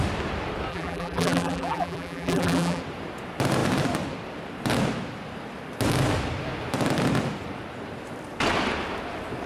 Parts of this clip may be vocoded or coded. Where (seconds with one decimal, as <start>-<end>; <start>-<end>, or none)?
0.7-2.8